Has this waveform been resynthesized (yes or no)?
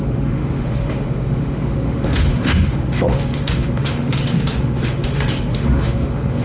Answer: yes